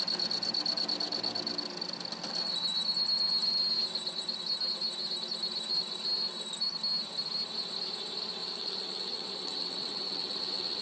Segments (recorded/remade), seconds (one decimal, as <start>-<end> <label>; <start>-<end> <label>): 0.0-8.4 recorded; 8.4-10.8 remade